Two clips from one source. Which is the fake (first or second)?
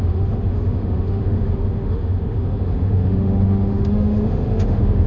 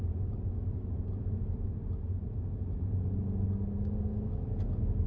first